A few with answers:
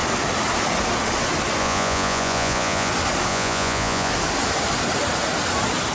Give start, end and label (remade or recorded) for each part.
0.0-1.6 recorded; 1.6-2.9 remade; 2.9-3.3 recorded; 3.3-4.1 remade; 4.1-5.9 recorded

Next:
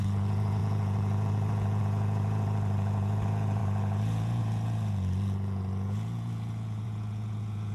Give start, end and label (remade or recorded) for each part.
0.0-7.7 remade

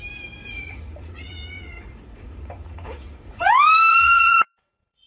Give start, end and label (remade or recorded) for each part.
0.0-0.4 recorded; 0.4-3.5 remade; 3.5-3.9 recorded; 3.9-5.1 remade

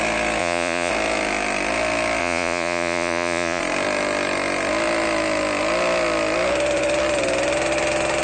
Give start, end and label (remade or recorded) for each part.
0.0-0.4 recorded; 0.4-0.9 remade; 0.9-2.2 recorded; 2.2-3.6 remade; 3.6-8.2 recorded